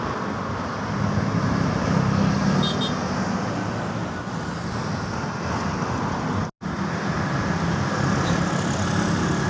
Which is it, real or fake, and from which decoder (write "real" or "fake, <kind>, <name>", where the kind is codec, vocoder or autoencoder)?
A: real